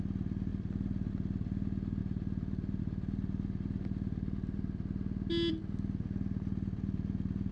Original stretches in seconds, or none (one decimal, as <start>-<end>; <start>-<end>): 0.0-7.5